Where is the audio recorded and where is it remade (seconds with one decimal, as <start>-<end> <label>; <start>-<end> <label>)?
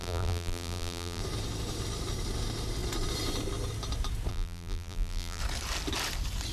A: 0.0-1.2 remade; 1.2-4.3 recorded; 4.3-5.4 remade; 5.4-6.5 recorded